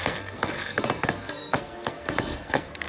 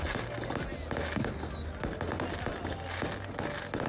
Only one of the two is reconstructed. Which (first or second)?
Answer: first